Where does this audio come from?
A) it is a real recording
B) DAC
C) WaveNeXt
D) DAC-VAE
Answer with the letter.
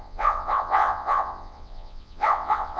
C